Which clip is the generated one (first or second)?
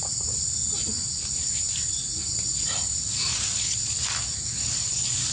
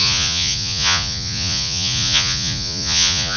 second